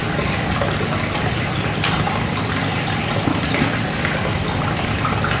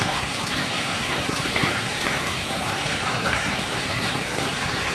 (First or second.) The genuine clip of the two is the first